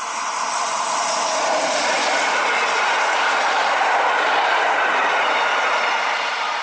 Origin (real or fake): real